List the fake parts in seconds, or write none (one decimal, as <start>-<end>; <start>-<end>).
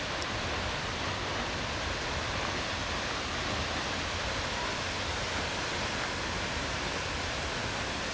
none